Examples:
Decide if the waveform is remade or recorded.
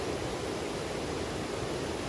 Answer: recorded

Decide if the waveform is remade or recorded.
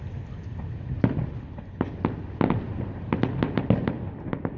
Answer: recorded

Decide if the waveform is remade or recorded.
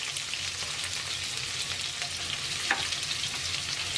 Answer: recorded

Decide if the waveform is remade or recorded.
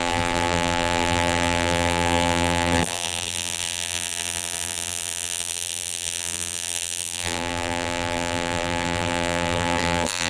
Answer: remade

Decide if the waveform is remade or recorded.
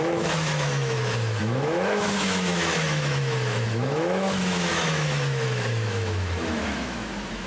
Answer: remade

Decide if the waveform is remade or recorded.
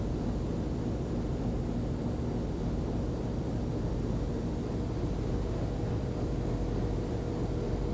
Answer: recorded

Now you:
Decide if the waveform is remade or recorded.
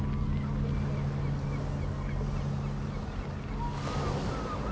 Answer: recorded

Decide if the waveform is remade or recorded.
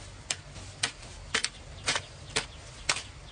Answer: recorded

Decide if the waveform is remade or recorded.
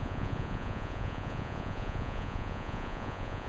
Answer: remade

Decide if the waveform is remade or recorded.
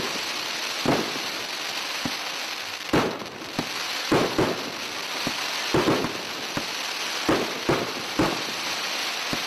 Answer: recorded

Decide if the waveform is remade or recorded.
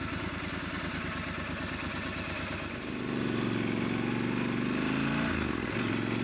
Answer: recorded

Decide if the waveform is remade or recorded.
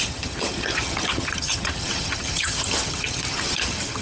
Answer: remade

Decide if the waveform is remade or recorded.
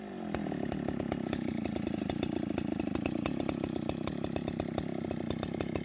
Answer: recorded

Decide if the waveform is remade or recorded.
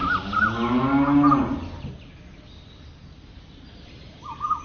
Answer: recorded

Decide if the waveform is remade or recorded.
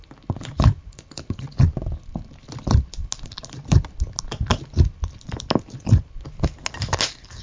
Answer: recorded